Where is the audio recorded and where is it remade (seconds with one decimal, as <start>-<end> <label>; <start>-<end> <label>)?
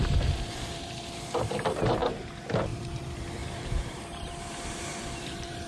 0.0-5.7 remade